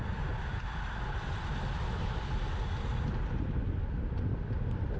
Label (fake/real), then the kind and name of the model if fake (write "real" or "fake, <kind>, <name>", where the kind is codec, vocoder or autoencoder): real